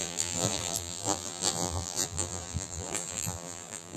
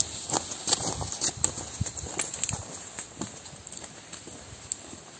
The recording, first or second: second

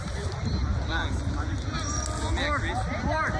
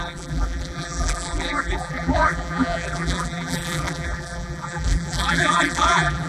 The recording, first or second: first